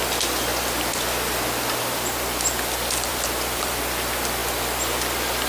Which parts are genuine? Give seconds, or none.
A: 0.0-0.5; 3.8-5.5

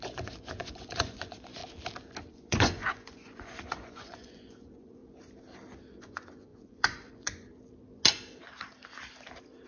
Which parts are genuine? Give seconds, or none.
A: 1.6-2.3; 5.0-6.0; 7.5-9.7

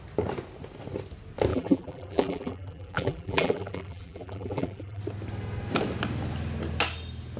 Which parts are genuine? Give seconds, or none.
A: 0.0-1.5; 5.0-7.4